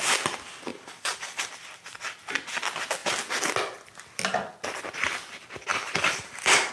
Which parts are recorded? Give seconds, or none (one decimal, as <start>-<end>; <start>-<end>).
0.0-0.7; 1.5-5.7